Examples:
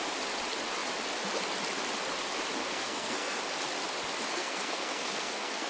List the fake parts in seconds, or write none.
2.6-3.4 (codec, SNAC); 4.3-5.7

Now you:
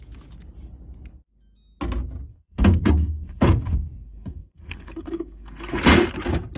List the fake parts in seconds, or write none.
2.3-5.8 (codec, SNAC)